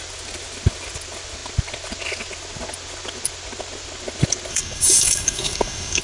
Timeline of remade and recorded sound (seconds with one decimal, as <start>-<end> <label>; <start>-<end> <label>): 0.0-4.5 recorded; 4.5-6.0 remade